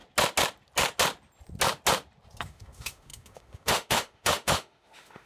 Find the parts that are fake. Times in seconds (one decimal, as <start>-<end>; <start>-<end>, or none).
2.4-5.3